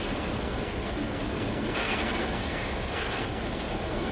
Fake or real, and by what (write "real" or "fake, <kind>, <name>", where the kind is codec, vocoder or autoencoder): fake, codec, SNAC